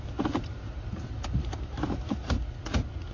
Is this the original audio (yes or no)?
no